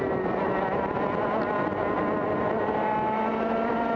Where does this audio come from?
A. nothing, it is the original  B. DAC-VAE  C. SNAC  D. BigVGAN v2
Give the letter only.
A